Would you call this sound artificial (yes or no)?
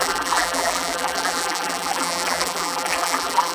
yes